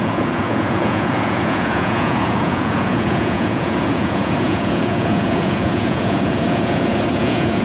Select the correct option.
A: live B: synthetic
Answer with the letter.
B